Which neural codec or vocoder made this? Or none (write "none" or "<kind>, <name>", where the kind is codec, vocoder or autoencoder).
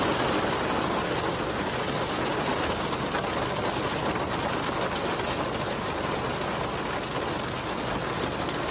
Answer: none